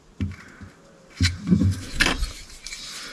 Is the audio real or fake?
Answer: real